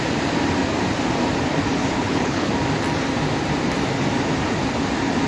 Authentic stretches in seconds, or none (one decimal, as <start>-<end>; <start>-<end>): 0.0-1.8; 2.5-5.3